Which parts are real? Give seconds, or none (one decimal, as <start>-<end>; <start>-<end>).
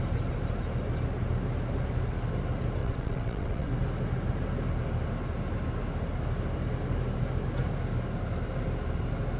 0.0-2.8; 3.7-9.4